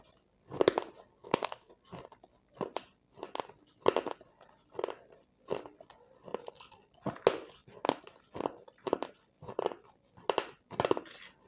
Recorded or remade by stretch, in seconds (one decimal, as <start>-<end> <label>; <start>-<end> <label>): 0.0-1.2 recorded; 1.2-1.7 remade; 1.7-11.5 recorded